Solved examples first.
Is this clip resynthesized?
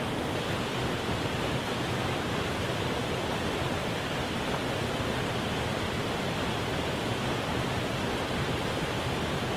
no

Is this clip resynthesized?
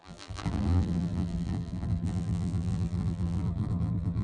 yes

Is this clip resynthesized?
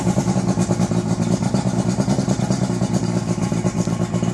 no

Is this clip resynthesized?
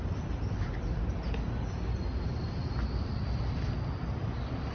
no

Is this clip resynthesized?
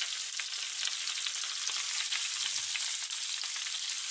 no